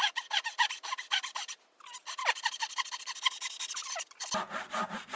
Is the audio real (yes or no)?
yes